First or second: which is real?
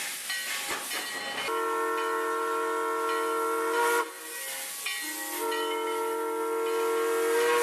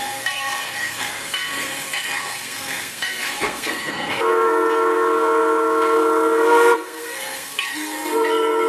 first